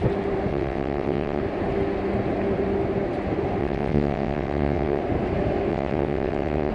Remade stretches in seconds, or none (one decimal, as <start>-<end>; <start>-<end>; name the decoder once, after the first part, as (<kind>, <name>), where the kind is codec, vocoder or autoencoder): 0.5-1.4 (vocoder, WaveNeXt); 3.6-5.0; 5.7-6.7